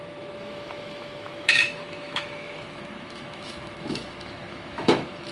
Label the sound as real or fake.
fake